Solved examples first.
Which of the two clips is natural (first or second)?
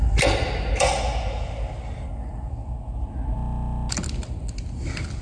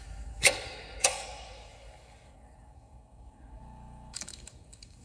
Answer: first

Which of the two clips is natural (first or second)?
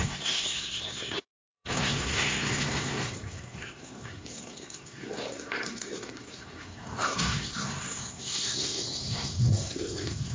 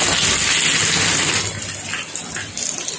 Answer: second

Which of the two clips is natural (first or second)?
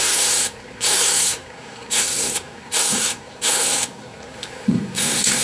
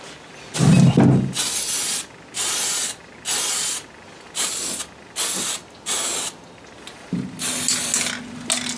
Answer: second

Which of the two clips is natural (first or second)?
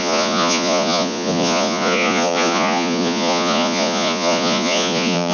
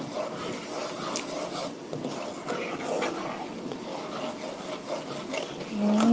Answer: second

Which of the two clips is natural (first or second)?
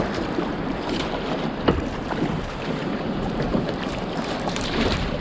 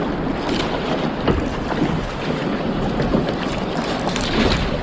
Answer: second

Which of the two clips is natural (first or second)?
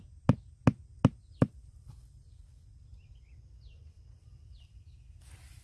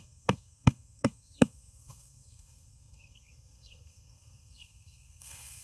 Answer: first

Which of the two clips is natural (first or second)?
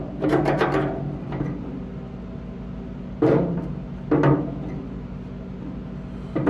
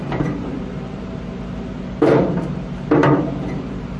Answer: first